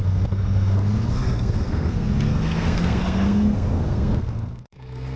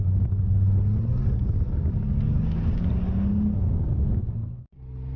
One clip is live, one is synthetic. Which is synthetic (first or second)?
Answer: first